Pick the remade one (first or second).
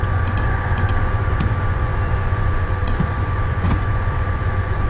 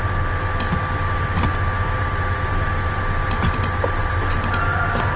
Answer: first